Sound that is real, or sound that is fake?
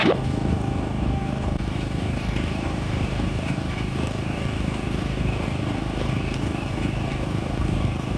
fake